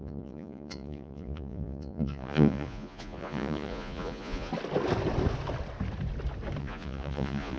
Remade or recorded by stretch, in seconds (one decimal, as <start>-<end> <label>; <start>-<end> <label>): 0.0-4.5 remade; 4.5-6.6 recorded; 6.6-7.6 remade